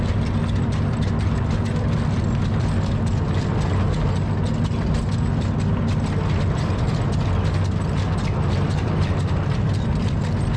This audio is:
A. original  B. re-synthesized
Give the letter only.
A